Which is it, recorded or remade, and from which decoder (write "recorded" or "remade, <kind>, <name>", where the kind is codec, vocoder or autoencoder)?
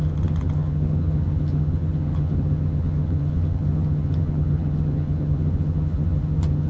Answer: remade, vocoder, HiFi-GAN